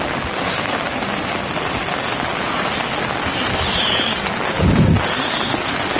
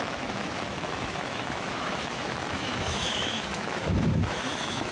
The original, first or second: first